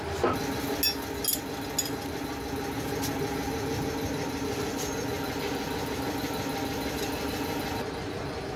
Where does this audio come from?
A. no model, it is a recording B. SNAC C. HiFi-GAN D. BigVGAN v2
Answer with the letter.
A